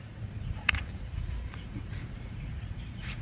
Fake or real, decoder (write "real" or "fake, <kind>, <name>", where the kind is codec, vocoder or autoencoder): fake, vocoder, Vocos